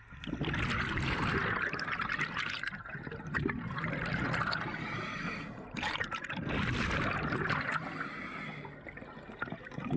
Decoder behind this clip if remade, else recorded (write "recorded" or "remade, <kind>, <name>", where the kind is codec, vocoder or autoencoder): recorded